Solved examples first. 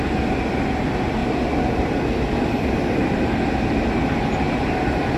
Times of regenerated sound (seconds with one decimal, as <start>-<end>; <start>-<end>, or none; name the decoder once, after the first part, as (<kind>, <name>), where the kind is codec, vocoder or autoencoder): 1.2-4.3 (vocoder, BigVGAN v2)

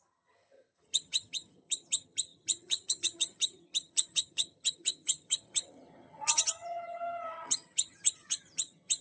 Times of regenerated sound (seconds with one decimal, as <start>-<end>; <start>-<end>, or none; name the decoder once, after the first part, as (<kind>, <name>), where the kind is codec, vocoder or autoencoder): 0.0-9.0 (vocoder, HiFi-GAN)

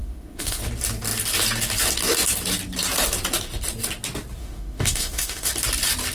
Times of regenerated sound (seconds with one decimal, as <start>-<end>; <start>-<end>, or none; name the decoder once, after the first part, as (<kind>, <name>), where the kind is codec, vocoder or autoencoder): 0.0-0.6 (autoencoder, DAC-VAE); 4.4-5.5

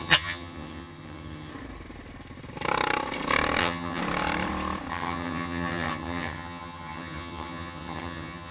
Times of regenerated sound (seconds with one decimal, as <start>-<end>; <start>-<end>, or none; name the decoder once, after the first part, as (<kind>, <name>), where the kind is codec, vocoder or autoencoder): 0.0-1.5 (vocoder, HiFi-GAN); 3.6-4.0; 4.9-8.5

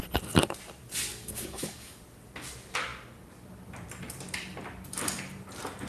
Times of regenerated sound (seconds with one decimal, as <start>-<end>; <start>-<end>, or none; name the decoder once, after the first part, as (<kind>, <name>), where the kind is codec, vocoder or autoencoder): 1.1-2.0 (codec, DAC)

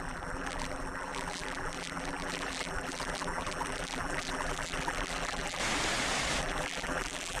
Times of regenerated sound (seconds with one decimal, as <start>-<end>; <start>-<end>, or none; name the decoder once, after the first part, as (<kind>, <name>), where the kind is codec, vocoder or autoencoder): 0.0-5.6 (vocoder, BigVGAN v2); 6.4-7.4

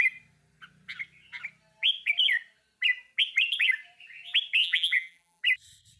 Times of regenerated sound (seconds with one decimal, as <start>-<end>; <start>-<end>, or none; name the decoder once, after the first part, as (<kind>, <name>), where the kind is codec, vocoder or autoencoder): 4.6-5.4 (vocoder, BigVGAN v2)